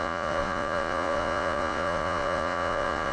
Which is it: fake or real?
fake